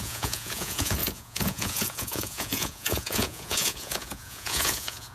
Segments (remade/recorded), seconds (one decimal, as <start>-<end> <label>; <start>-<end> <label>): 0.0-5.1 remade